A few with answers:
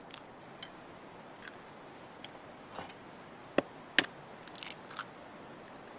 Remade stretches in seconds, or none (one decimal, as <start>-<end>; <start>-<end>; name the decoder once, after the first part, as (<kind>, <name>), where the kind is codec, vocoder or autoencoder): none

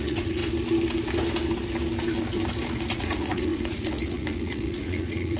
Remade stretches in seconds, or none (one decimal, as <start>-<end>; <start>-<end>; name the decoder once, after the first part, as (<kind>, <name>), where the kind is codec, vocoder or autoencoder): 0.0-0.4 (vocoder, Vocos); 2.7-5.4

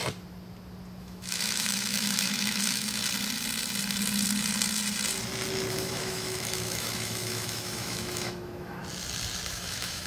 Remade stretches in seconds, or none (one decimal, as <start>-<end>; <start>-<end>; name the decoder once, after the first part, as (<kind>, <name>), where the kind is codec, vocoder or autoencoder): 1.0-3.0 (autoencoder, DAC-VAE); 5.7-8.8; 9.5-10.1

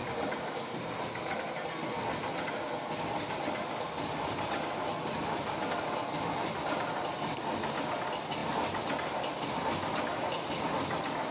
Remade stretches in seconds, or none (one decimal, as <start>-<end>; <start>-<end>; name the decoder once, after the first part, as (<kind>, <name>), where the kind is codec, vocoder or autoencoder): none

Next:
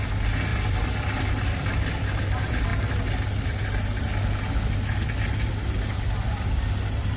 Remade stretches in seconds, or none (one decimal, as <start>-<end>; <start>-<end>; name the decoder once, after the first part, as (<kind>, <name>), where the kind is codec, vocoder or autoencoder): none

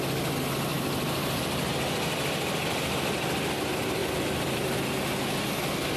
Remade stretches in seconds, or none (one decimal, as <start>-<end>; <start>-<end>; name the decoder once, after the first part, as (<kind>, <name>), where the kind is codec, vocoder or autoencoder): 0.7-1.4 (vocoder, BigVGAN v2); 4.0-5.0